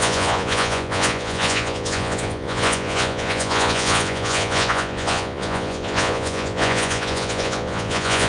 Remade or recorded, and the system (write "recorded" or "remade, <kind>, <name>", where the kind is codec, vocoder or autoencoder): remade, vocoder, Vocos